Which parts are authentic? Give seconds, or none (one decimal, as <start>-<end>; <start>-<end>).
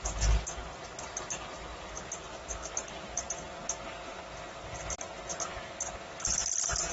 0.0-6.9